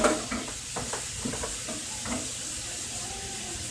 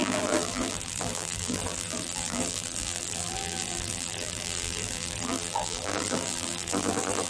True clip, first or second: first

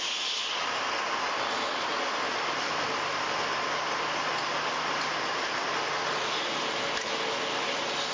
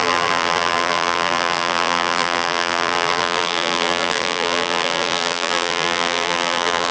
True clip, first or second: first